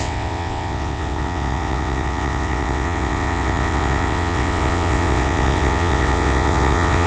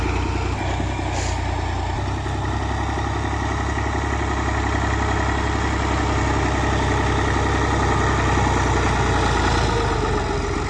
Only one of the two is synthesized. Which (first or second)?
first